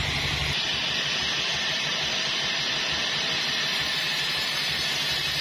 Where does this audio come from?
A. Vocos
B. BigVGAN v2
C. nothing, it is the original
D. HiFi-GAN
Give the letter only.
B